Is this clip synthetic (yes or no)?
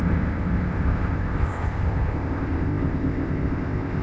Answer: yes